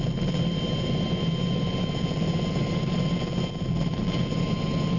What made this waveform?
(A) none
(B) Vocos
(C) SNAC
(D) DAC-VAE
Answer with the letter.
A